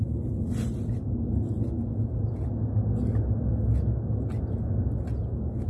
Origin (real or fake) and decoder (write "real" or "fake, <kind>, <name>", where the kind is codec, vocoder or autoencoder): real